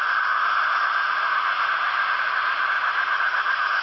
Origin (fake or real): real